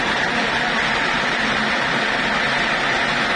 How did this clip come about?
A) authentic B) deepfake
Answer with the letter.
A